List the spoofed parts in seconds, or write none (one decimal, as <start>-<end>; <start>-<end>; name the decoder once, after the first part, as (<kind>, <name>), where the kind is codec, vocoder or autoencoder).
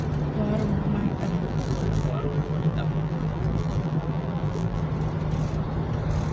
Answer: 1.0-4.8 (vocoder, BigVGAN v2)